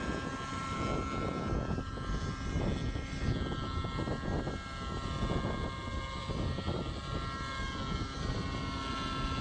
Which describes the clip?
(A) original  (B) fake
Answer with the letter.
A